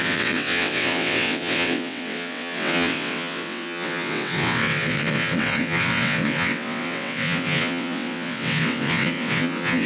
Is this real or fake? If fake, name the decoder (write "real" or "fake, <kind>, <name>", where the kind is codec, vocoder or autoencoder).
fake, vocoder, WaveNeXt